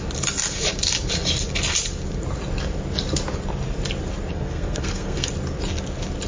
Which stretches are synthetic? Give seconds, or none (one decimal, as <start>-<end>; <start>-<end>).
4.3-5.3